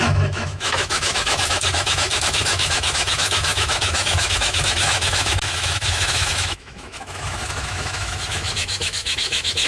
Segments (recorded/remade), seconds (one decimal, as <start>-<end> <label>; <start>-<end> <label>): 0.0-9.7 remade